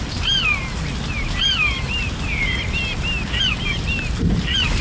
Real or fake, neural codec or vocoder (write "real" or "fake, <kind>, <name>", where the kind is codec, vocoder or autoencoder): real